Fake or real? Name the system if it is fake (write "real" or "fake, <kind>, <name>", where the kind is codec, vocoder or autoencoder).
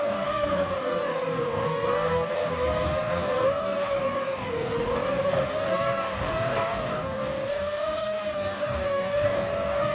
fake, codec, DAC